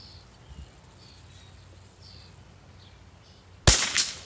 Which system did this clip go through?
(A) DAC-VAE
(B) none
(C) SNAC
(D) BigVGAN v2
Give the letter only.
B